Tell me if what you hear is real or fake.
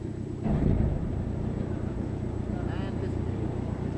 fake